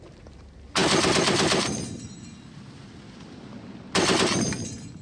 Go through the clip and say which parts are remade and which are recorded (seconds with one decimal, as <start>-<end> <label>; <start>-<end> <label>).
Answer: 0.0-5.0 recorded

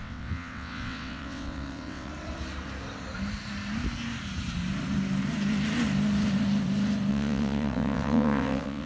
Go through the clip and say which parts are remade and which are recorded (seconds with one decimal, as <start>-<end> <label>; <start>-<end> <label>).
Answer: 0.0-2.1 remade; 2.1-7.1 recorded; 7.1-8.9 remade

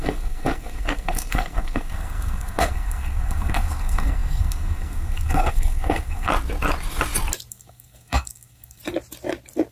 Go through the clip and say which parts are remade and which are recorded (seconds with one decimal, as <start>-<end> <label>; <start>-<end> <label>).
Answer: 0.0-6.3 remade; 6.3-7.5 recorded; 7.5-8.8 remade; 8.8-9.7 recorded

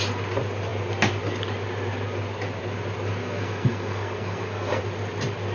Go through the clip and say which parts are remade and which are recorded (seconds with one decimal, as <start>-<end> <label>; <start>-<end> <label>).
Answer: 0.0-3.2 recorded; 3.2-4.8 remade; 4.8-5.5 recorded

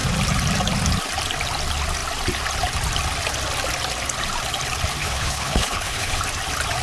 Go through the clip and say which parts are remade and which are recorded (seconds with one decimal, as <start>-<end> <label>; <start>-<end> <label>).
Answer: 0.0-5.0 recorded; 5.0-6.2 remade; 6.2-6.8 recorded

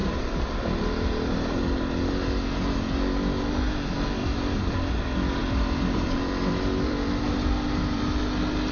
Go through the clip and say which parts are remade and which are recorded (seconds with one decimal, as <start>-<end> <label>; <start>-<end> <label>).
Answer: 0.0-2.1 remade; 2.1-4.2 recorded; 4.2-4.9 remade; 4.9-5.4 recorded; 5.4-8.2 remade; 8.2-8.7 recorded

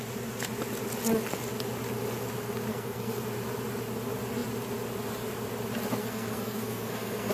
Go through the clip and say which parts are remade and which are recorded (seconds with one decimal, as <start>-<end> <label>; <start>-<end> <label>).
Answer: 0.0-2.7 recorded; 2.7-3.2 remade; 3.2-6.0 recorded; 6.0-7.3 remade